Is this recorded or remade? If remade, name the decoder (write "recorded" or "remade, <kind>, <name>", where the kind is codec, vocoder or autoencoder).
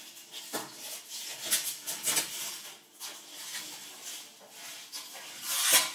recorded